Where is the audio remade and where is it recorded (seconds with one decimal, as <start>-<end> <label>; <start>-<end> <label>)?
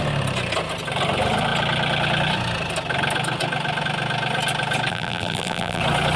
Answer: 0.0-4.9 recorded; 4.9-5.8 remade; 5.8-6.2 recorded